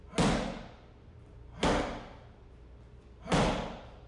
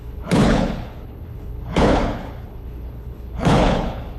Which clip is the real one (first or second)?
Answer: first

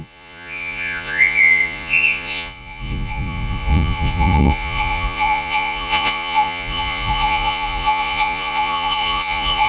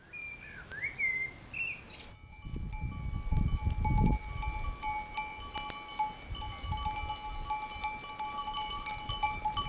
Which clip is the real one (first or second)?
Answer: second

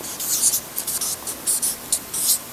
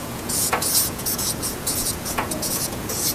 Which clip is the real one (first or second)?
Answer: first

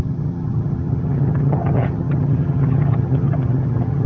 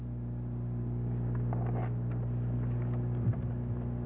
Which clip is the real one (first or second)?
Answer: second